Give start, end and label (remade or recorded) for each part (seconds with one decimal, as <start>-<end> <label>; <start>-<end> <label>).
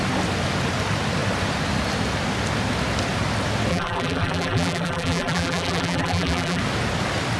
0.0-3.7 recorded; 3.7-6.6 remade; 6.6-7.4 recorded